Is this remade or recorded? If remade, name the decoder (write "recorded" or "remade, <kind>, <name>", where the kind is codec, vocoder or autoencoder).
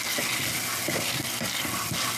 recorded